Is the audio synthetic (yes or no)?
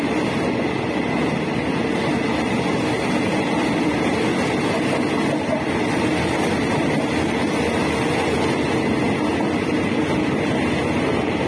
no